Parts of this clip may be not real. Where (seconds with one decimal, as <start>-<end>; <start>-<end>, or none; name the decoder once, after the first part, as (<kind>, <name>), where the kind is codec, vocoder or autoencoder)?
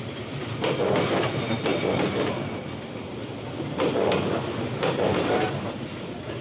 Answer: none